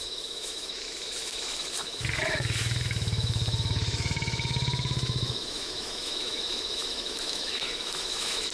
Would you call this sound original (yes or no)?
no